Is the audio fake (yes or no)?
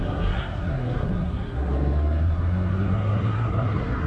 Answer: yes